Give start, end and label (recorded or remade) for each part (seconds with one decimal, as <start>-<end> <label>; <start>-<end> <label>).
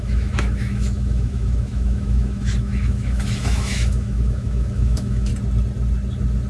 0.0-5.3 remade; 5.3-6.5 recorded